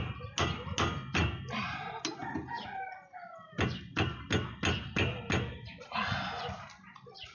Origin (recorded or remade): recorded